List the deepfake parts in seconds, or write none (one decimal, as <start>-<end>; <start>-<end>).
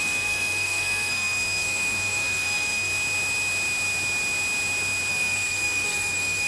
0.0-2.9; 5.1-6.5